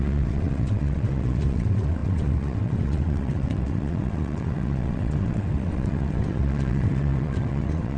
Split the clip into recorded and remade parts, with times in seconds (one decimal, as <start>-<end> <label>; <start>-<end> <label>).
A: 0.0-8.0 remade